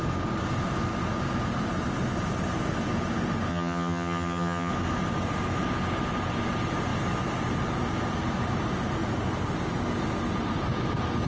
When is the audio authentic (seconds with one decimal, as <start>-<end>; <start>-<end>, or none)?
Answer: 0.0-3.5; 4.7-11.3